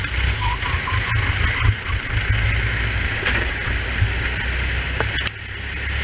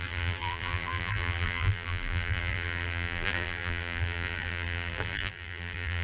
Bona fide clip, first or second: first